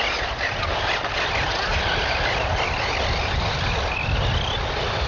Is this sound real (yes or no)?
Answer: yes